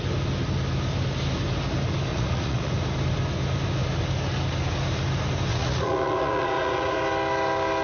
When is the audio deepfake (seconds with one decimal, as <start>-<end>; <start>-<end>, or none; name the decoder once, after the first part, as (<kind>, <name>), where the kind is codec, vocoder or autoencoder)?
2.1-2.7 (vocoder, Vocos); 5.5-7.0